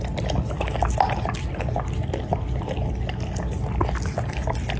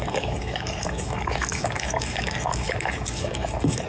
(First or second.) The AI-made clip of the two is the second